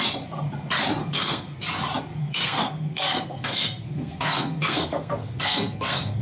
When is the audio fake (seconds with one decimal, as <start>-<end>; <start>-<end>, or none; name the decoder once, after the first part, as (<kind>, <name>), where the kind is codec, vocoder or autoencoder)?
1.0-1.6 (codec, SNAC); 2.2-6.2